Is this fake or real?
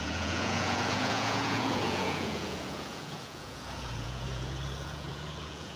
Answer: fake